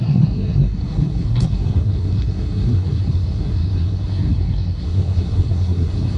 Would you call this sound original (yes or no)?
no